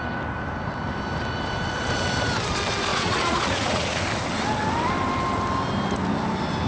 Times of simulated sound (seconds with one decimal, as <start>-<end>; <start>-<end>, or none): 2.9-4.0